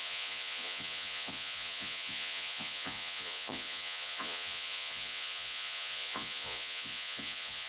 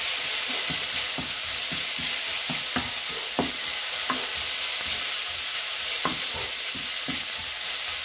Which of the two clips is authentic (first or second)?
second